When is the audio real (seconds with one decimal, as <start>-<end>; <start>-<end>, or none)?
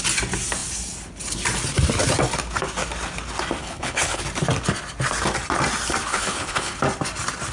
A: 0.0-3.6; 4.2-6.1; 6.8-7.5